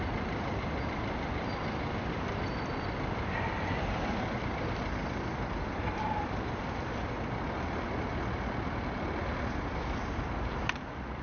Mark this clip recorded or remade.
recorded